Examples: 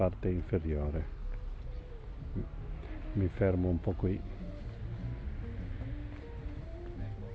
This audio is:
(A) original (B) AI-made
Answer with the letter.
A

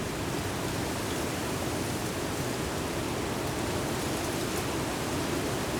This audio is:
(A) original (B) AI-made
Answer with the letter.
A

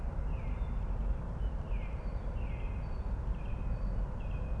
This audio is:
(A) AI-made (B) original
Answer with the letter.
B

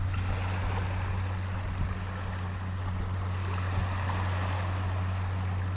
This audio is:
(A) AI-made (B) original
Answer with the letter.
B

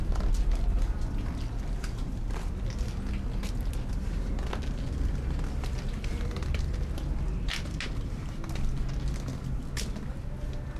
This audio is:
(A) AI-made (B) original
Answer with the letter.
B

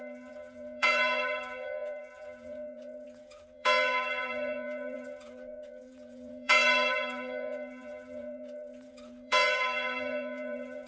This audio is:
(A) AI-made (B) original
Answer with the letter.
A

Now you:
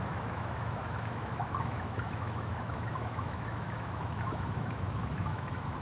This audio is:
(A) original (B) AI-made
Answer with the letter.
B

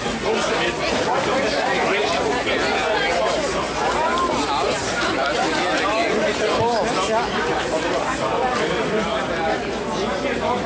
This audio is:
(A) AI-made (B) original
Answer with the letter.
B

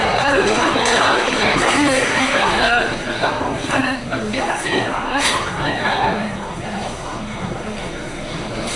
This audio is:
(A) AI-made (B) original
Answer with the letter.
A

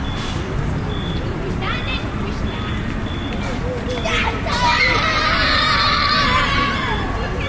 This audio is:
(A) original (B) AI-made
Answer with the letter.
A